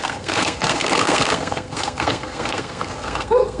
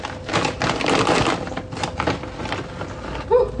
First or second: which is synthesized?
first